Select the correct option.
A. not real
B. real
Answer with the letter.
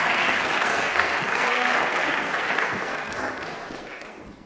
A